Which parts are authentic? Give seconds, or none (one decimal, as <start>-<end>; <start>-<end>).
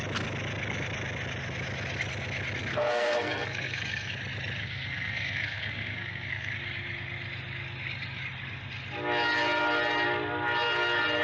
0.0-2.7; 4.1-4.6; 6.5-11.2